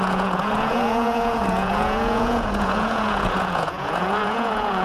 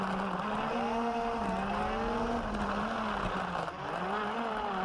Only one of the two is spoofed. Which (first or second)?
first